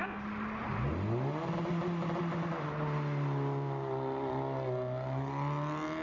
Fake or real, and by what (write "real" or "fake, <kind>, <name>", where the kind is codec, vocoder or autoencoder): real